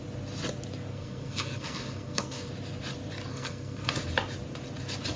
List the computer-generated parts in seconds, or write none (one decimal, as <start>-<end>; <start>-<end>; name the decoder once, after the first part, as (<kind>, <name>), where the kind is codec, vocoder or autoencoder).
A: 0.9-2.5 (codec, SNAC); 3.3-3.9

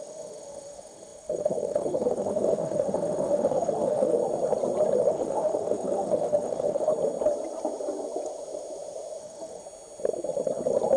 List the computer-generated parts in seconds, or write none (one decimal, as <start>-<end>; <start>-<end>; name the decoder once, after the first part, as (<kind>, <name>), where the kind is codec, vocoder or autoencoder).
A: 0.0-4.2 (autoencoder, DAC-VAE); 5.0-6.9; 9.2-9.6

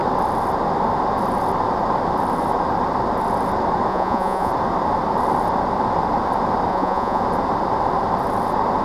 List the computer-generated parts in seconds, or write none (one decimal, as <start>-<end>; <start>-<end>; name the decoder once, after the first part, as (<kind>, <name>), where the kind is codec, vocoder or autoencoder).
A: 3.9-4.5 (vocoder, Vocos); 6.7-7.2

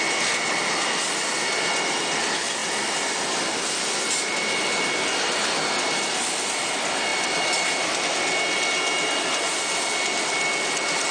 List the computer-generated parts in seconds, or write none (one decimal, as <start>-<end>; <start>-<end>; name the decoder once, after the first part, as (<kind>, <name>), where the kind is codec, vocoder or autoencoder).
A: none